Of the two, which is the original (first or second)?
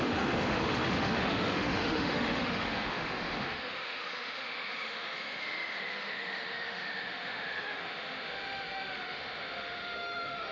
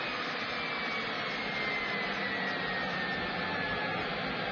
second